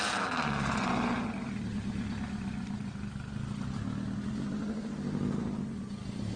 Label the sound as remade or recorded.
recorded